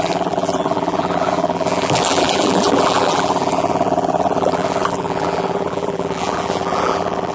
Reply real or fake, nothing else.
fake